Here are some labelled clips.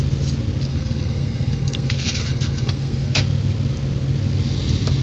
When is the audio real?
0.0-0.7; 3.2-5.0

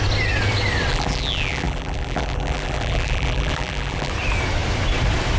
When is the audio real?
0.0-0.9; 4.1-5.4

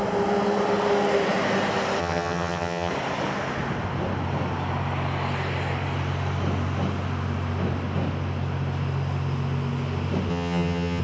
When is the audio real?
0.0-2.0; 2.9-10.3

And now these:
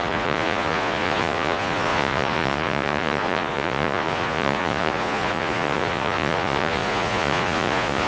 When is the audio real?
none